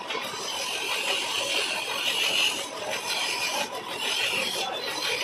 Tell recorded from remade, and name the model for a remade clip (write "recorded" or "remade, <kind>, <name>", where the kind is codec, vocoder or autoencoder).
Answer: recorded